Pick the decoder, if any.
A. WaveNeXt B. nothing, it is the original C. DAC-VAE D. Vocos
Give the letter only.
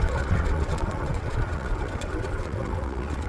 A